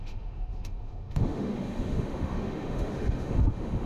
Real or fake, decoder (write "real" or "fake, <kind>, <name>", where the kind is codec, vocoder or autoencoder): fake, autoencoder, DAC-VAE